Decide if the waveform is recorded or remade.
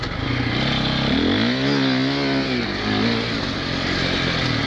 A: recorded